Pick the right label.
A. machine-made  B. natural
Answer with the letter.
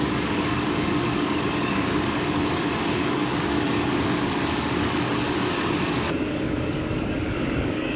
A